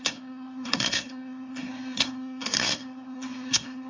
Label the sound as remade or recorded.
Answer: remade